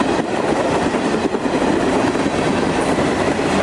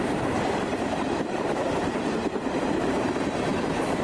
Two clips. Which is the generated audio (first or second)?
second